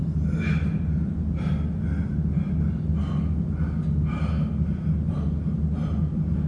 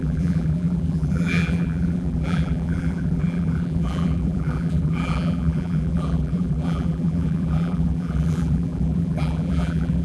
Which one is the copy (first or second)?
second